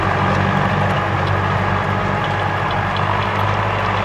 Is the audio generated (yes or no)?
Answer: no